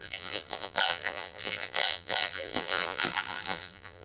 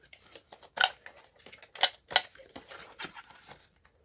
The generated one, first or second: first